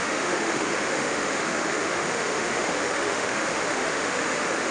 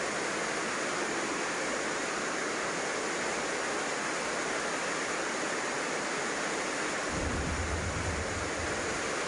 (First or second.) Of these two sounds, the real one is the second